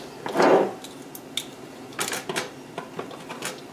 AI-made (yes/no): no